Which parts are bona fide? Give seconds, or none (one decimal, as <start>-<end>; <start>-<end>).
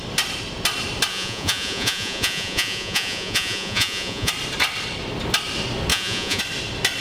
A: 0.0-1.1; 4.3-5.9; 6.4-7.0